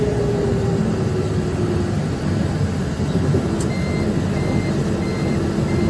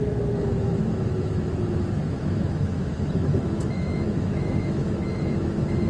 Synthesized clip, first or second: second